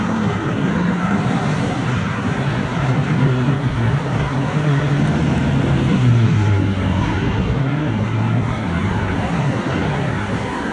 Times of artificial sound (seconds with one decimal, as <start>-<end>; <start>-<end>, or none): 0.0-5.0; 5.9-10.7